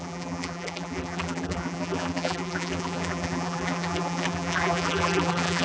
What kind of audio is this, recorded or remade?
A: remade